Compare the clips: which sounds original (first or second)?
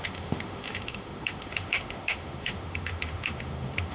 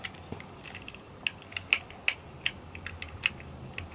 second